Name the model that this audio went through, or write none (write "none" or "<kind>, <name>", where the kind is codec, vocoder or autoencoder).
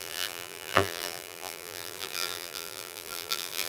vocoder, BigVGAN v2